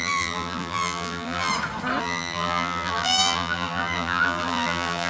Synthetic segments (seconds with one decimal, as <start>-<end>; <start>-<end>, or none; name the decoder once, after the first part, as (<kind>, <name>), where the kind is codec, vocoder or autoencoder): 0.0-1.5 (vocoder, BigVGAN v2); 2.0-5.1